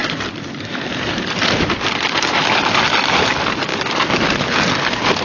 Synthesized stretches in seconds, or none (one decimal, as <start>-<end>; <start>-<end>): 0.0-3.1